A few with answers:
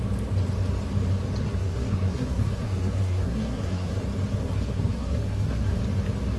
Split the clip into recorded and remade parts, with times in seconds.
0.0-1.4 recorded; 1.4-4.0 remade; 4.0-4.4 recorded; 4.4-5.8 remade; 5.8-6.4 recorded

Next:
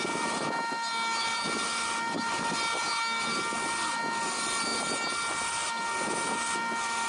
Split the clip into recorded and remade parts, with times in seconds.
0.0-7.1 recorded

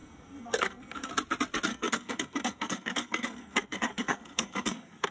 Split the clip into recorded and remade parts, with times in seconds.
0.0-1.1 remade; 1.1-1.7 recorded; 1.7-5.1 remade

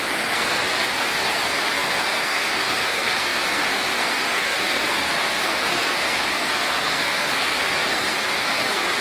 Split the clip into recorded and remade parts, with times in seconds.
0.0-9.0 remade

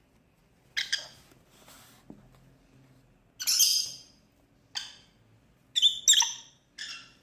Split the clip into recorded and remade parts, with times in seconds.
0.0-7.2 recorded

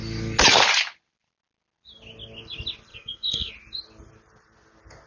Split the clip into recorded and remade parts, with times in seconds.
0.0-2.9 recorded; 2.9-3.5 remade; 3.5-5.1 recorded

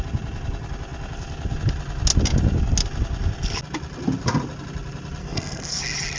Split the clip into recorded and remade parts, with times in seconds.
0.0-5.2 recorded; 5.2-5.8 remade; 5.8-6.2 recorded